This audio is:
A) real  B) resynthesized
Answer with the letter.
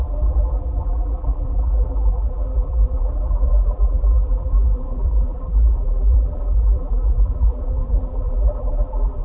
B